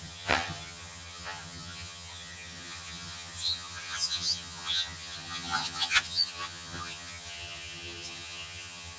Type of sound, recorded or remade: remade